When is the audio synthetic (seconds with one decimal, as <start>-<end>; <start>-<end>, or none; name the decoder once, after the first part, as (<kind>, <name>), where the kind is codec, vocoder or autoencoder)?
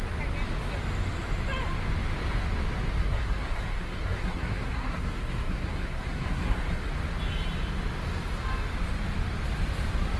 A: 3.0-6.9 (codec, SNAC)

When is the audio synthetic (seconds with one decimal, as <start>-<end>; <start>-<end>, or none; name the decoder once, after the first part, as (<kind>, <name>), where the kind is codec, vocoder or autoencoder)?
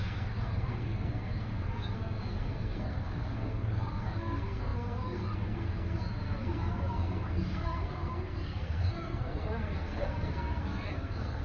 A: 0.0-11.4 (codec, SNAC)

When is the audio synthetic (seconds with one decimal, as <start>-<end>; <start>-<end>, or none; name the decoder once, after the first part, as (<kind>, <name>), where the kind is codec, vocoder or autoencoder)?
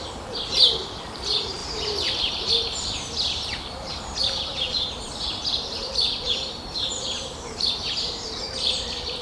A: 0.0-9.2 (vocoder, BigVGAN v2)